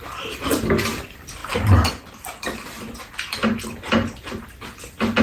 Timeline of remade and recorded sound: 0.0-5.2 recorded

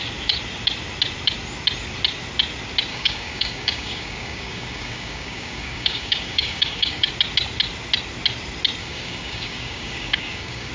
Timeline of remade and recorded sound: 0.0-2.9 recorded; 2.9-7.1 remade; 7.1-8.8 recorded; 8.8-10.7 remade

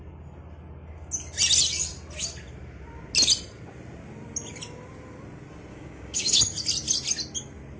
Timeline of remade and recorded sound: 0.0-5.7 recorded; 5.7-6.4 remade; 6.4-7.8 recorded

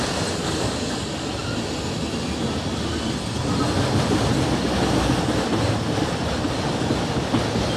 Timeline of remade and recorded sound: 0.0-0.4 recorded; 0.4-0.9 remade; 0.9-7.8 recorded

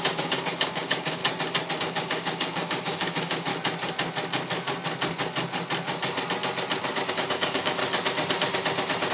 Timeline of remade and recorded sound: 0.0-1.2 remade; 1.2-1.8 recorded; 1.8-3.5 remade; 3.5-7.1 recorded; 7.1-7.8 remade; 7.8-9.1 recorded